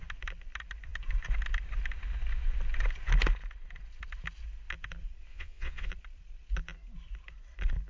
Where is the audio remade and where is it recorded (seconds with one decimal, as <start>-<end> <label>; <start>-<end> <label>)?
0.0-5.3 recorded; 5.3-5.9 remade; 5.9-7.9 recorded